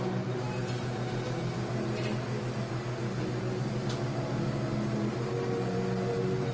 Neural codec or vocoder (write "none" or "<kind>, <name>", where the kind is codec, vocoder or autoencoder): none